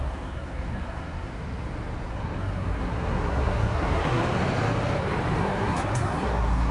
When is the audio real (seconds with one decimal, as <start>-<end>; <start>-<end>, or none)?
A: 1.3-2.1; 4.2-5.4